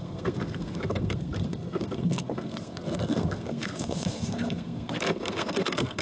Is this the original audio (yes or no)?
no